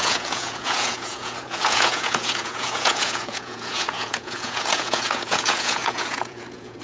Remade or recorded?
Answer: remade